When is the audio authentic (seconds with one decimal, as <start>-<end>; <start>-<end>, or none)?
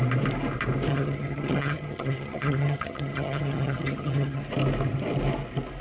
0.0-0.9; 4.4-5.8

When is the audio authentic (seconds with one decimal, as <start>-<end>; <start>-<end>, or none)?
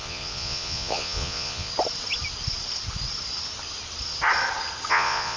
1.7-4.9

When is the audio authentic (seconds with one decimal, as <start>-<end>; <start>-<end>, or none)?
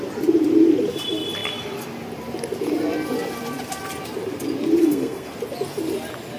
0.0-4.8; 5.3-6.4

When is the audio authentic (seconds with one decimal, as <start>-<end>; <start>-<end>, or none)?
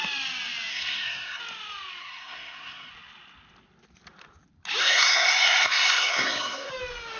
0.0-0.7; 1.4-2.0; 2.9-4.8; 6.7-7.2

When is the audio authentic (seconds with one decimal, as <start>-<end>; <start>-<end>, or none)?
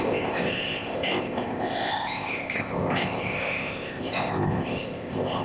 none